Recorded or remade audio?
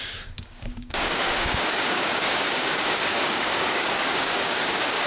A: remade